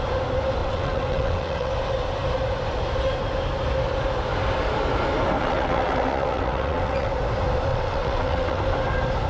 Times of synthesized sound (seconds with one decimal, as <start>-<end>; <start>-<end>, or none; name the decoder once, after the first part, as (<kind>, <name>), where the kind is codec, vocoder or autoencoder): 0.6-1.7 (vocoder, WaveNeXt); 5.4-7.1; 7.7-8.6